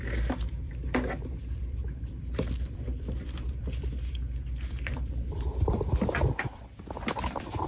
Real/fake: fake